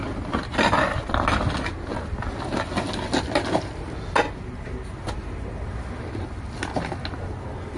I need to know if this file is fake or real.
real